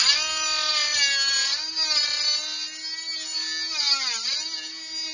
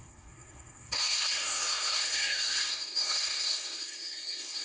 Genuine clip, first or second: first